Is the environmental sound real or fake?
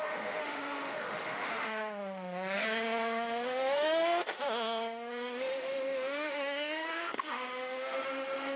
fake